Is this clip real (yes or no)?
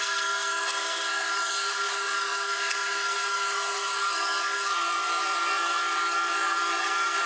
no